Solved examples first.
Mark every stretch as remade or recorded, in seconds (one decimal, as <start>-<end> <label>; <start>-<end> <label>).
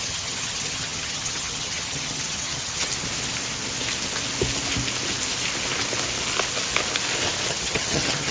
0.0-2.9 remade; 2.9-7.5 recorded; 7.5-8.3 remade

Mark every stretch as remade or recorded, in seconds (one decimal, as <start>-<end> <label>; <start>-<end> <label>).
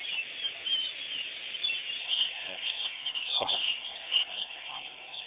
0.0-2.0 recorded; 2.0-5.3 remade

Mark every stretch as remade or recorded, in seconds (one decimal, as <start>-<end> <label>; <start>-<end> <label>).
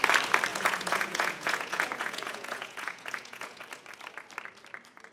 0.0-0.5 recorded; 0.5-3.6 remade; 3.6-5.1 recorded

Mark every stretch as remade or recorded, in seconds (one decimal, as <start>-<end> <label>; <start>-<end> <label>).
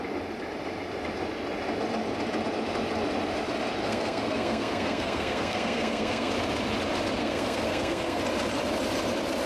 0.0-3.8 recorded; 3.8-6.3 remade; 6.3-7.2 recorded; 7.2-8.2 remade; 8.2-9.5 recorded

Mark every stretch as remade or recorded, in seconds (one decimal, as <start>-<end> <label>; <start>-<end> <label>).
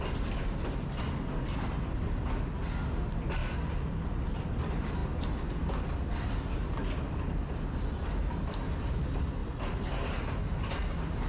0.0-11.3 recorded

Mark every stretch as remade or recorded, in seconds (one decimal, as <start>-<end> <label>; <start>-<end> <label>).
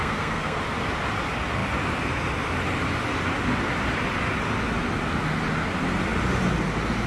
0.0-0.6 remade; 0.6-7.1 recorded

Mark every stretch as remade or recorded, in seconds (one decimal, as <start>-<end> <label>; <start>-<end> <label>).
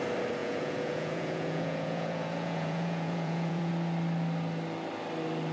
0.0-0.4 recorded; 0.4-3.7 remade; 3.7-5.5 recorded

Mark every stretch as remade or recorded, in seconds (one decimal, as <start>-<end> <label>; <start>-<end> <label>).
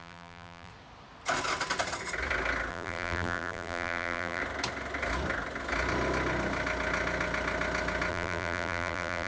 0.0-0.7 remade; 0.7-2.7 recorded; 2.7-4.4 remade; 4.4-8.1 recorded; 8.1-9.3 remade